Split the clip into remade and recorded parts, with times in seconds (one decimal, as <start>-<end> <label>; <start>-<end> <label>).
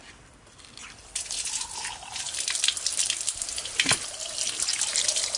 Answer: 0.0-5.4 recorded